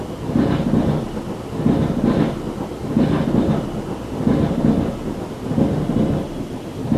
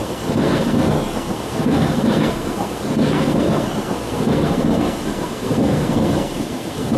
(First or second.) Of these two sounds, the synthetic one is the second